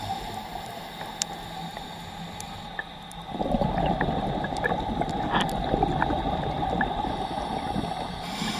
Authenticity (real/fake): real